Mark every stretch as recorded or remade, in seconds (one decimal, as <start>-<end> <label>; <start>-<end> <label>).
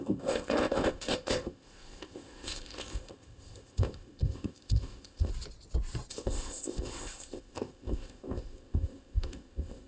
0.0-5.3 remade; 5.3-6.1 recorded; 6.1-9.9 remade